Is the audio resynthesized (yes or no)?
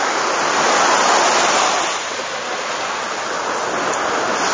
no